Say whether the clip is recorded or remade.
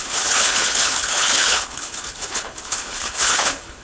remade